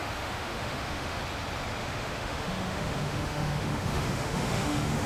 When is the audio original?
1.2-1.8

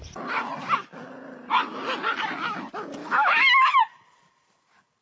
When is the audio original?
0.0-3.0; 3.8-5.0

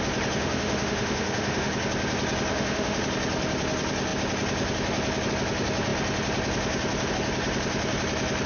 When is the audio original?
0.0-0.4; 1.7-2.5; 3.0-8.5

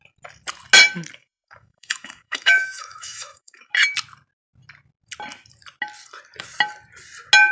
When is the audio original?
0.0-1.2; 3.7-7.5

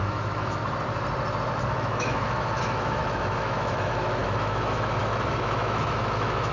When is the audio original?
0.6-1.7